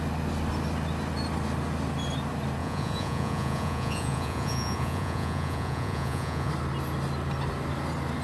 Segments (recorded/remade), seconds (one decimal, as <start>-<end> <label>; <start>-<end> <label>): 0.0-2.6 recorded; 2.6-6.5 remade; 6.5-8.2 recorded